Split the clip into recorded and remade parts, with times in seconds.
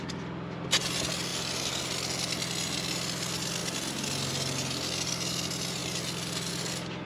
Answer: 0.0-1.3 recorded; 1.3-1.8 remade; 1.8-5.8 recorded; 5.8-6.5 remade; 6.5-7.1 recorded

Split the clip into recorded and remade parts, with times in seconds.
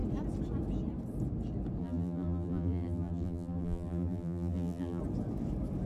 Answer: 0.0-1.8 recorded; 1.8-5.0 remade; 5.0-5.9 recorded